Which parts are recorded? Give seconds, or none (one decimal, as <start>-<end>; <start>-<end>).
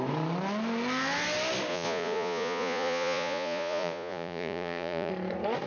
0.0-1.7; 5.1-5.7